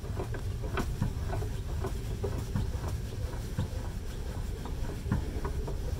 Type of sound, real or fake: real